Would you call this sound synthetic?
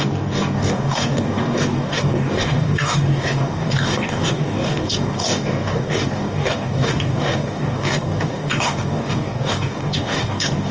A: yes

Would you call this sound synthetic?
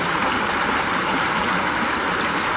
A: no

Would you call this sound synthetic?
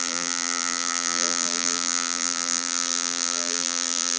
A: yes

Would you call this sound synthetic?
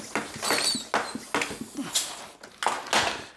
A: no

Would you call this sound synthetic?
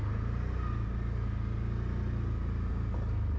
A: no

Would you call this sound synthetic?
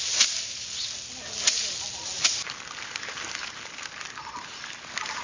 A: no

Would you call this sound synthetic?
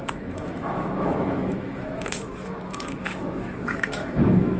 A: yes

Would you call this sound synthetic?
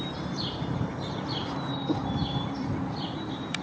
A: yes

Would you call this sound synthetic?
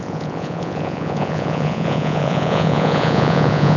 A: yes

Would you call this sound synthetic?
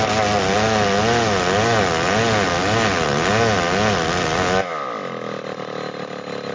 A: no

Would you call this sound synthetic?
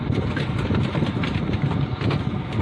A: no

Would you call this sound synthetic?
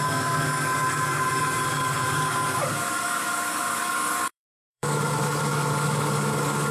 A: yes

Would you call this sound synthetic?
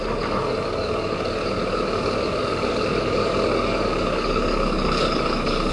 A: yes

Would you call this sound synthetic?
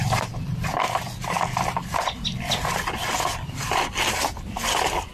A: no